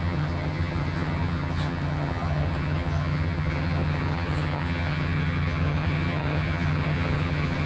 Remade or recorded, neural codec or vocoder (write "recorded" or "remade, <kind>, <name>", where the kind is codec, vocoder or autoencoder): remade, vocoder, HiFi-GAN